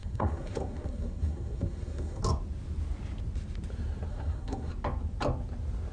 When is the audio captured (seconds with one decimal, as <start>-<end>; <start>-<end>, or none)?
2.2-4.1; 4.7-5.9